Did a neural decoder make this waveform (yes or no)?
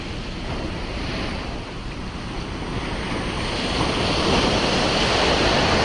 no